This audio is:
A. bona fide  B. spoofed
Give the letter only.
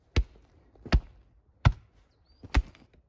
A